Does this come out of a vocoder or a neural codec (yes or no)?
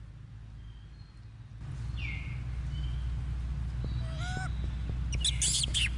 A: no